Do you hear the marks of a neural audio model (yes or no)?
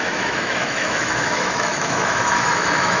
yes